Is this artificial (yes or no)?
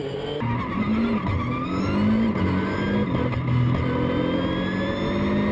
no